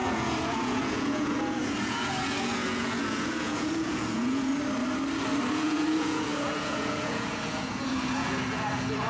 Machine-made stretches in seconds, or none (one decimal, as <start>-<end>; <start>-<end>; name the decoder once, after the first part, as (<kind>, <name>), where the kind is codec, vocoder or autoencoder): 0.0-4.5 (vocoder, Vocos); 5.5-9.1